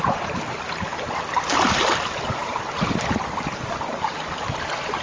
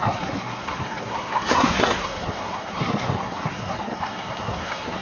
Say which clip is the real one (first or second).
first